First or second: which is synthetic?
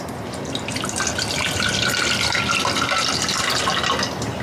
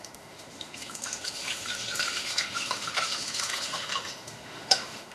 second